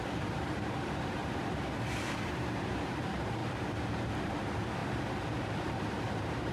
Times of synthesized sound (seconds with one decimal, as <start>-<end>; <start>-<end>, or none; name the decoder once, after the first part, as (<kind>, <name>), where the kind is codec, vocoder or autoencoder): 0.0-1.2 (vocoder, BigVGAN v2); 1.9-3.4; 4.2-4.8; 5.8-6.5

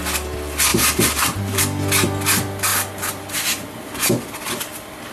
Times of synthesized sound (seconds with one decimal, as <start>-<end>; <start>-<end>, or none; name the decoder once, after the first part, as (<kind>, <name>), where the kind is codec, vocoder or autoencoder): 0.7-1.6 (vocoder, BigVGAN v2)

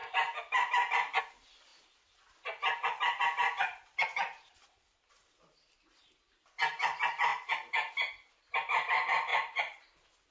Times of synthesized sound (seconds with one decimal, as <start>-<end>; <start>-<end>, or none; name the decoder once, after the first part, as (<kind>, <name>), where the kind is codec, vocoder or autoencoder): 0.0-7.3 (vocoder, BigVGAN v2); 8.3-10.3

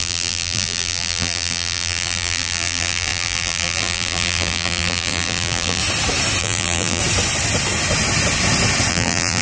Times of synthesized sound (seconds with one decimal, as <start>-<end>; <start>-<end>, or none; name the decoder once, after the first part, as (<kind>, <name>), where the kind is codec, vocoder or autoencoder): 0.0-5.8 (vocoder, BigVGAN v2); 6.4-7.0; 8.9-9.4

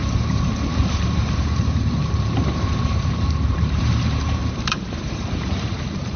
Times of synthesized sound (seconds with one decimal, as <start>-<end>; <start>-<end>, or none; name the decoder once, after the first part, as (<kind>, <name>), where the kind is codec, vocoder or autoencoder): 0.0-6.2 (vocoder, BigVGAN v2)

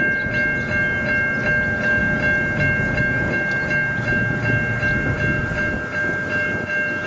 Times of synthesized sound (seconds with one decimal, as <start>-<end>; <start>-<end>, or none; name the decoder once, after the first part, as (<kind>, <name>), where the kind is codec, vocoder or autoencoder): none

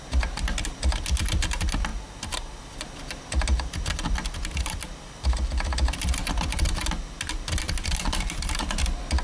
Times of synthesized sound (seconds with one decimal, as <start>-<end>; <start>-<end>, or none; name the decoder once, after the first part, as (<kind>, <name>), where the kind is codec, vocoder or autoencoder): none

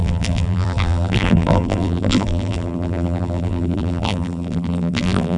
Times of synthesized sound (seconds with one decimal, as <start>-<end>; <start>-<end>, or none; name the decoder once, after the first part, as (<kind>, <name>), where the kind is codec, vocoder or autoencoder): 0.0-5.4 (vocoder, BigVGAN v2)